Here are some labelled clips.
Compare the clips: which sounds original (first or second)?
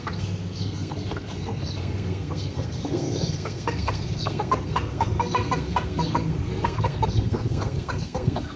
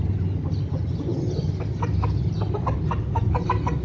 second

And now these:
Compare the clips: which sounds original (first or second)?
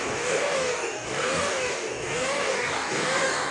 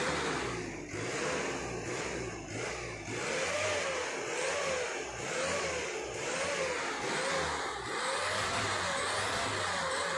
second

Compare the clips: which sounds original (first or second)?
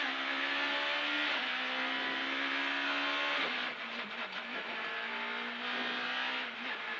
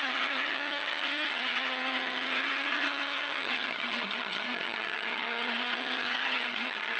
first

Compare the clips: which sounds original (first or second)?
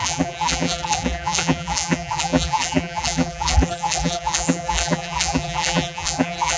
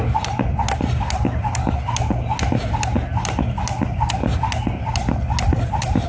second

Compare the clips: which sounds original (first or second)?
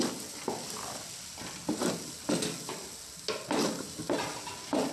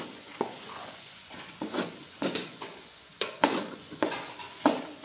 first